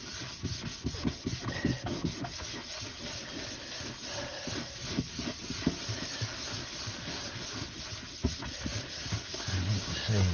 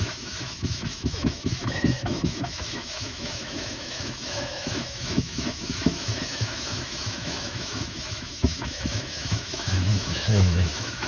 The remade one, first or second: second